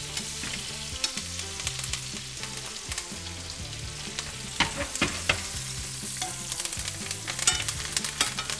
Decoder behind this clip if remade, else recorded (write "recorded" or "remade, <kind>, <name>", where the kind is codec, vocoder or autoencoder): recorded